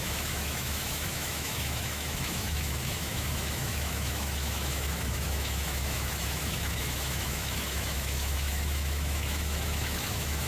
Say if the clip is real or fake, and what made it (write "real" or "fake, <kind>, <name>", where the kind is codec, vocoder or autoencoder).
fake, autoencoder, DAC-VAE